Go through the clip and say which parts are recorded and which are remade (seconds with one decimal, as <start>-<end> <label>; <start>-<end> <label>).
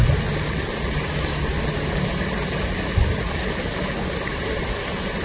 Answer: 0.0-5.2 recorded